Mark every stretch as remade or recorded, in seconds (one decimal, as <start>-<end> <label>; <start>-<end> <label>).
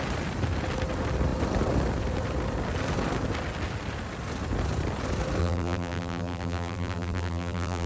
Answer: 0.0-5.4 recorded; 5.4-7.9 remade